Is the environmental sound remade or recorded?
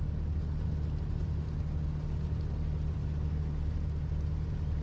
recorded